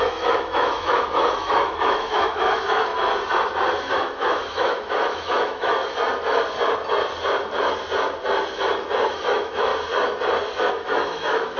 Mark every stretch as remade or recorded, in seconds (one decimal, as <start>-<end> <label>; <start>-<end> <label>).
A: 0.0-2.9 remade; 2.9-3.9 recorded; 3.9-5.8 remade; 5.8-9.1 recorded; 9.1-9.7 remade; 9.7-10.7 recorded; 10.7-11.6 remade